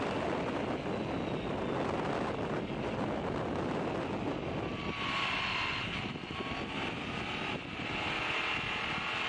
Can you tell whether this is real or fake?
real